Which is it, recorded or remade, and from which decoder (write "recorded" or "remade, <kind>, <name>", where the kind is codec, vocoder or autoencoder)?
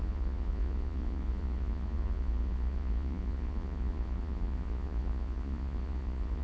remade, vocoder, Vocos